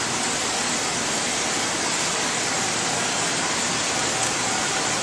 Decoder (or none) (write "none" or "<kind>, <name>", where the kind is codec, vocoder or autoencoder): none